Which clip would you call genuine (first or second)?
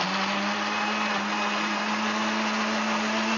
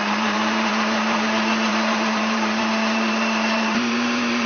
first